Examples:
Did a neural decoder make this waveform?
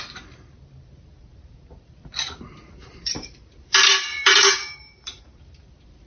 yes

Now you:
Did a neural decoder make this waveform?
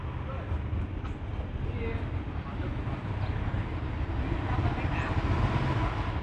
no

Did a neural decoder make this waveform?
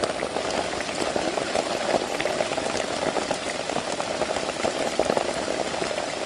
yes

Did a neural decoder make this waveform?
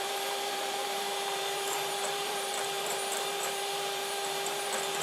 yes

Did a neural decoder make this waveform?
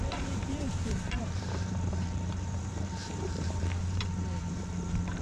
yes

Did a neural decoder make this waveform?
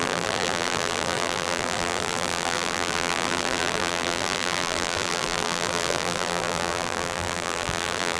yes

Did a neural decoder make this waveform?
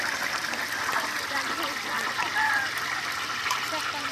no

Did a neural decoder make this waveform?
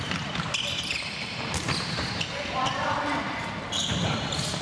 yes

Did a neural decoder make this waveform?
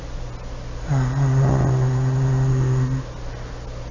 no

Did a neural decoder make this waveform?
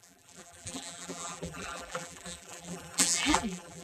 yes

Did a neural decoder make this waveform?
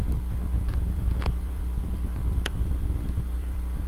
yes